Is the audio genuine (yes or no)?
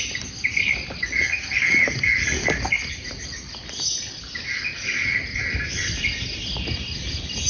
yes